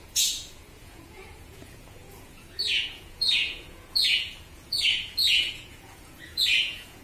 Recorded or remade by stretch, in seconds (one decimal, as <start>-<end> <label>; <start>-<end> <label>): 0.0-7.0 remade